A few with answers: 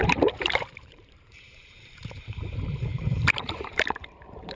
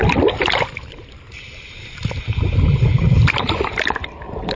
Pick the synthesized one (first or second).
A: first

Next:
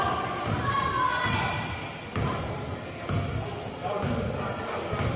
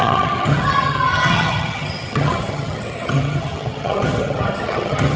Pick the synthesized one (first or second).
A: second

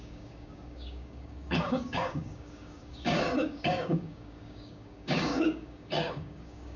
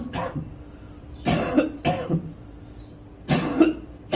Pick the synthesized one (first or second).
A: first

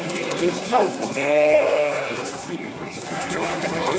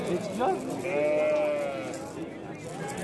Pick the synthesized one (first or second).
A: first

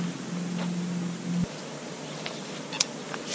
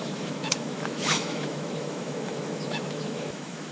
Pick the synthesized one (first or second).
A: second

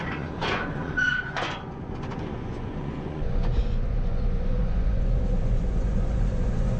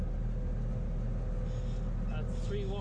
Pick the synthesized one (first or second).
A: first